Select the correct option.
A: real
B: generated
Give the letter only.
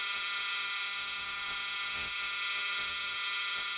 B